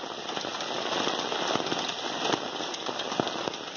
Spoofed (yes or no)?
no